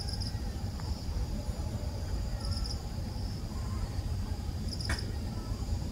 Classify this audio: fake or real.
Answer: fake